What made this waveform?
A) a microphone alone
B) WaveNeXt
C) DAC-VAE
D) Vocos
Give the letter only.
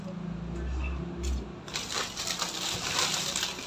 A